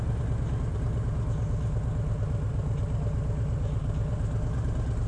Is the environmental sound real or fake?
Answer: real